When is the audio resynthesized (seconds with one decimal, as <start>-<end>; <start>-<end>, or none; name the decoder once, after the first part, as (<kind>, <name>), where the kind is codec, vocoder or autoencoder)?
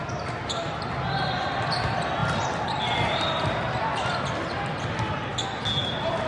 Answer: none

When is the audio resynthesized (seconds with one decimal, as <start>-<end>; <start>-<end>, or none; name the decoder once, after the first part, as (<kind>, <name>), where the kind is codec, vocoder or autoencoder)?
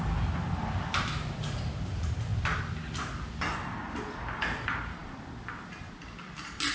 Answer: none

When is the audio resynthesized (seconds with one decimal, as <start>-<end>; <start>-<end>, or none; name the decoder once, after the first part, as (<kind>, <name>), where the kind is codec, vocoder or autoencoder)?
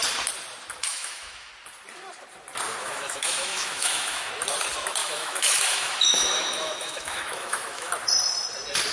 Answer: 0.9-1.5 (autoencoder, DAC-VAE); 2.8-4.3; 5.0-7.9